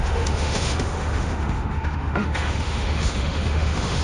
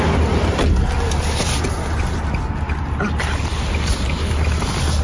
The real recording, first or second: second